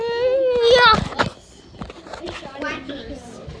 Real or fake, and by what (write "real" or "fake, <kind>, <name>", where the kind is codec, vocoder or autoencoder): real